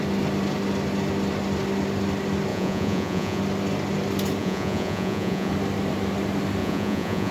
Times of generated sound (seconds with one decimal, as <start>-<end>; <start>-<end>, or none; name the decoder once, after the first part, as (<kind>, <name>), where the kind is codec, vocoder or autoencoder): 2.5-3.4 (vocoder, Vocos); 4.4-5.5; 6.6-7.3